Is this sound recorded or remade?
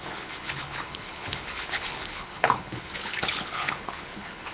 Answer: remade